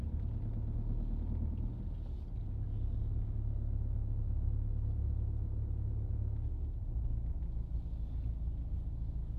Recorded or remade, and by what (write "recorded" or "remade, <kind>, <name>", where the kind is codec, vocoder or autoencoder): recorded